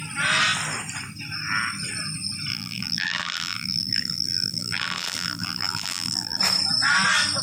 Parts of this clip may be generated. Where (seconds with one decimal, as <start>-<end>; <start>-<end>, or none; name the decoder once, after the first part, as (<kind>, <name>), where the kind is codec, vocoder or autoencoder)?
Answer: 2.5-6.4 (vocoder, BigVGAN v2)